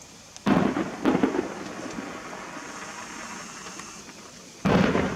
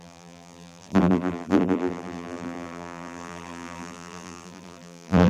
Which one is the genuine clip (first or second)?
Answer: first